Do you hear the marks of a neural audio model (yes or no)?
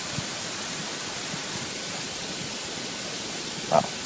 no